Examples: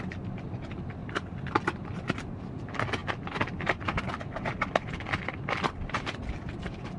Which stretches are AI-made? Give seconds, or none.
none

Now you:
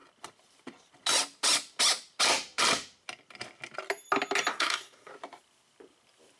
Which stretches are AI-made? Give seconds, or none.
4.5-5.1 (codec, SNAC)

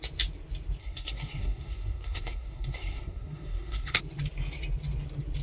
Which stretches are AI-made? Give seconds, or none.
0.8-4.0 (codec, SNAC)

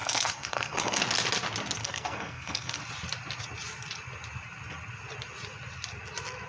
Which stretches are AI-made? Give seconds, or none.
0.0-1.0 (codec, SNAC); 1.8-2.8

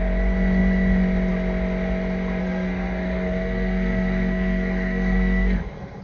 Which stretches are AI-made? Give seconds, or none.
2.4-6.0 (codec, SNAC)

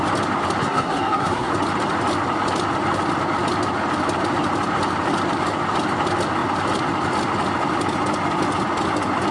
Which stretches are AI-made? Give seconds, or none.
0.6-1.5 (codec, SNAC)

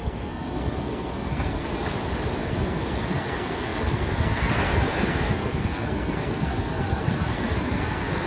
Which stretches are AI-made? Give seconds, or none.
0.0-1.7 (codec, SNAC); 2.4-8.3